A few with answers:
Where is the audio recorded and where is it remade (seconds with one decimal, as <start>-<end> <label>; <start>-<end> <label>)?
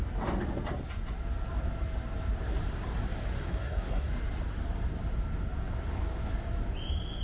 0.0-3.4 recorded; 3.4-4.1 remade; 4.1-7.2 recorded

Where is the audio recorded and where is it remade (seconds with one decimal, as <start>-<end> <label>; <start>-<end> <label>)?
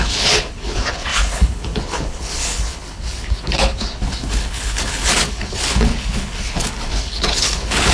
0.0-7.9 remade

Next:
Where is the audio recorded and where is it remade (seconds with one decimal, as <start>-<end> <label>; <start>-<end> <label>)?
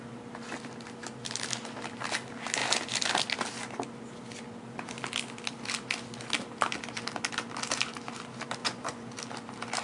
0.0-8.6 recorded; 8.6-9.1 remade; 9.1-9.8 recorded